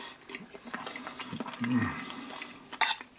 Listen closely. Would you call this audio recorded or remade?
recorded